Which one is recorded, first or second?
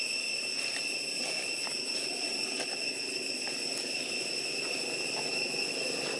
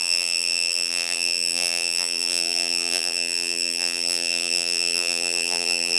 first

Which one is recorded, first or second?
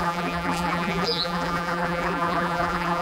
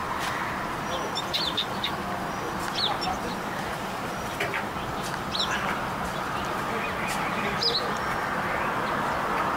second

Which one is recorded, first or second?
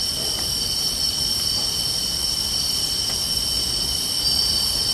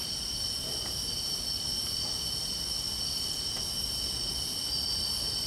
second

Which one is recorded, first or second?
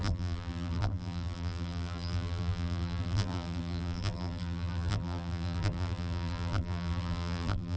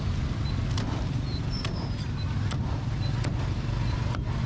second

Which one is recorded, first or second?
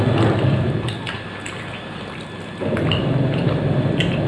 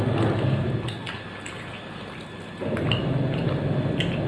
second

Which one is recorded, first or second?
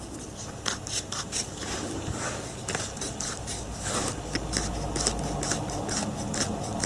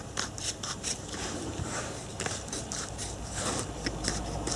first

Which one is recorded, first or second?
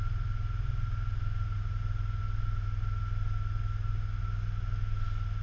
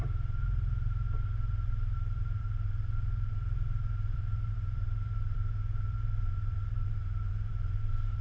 first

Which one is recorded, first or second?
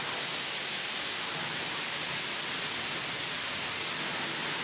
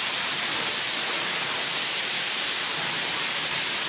first